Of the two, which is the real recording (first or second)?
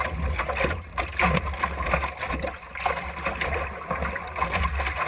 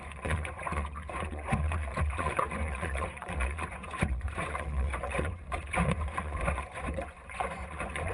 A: first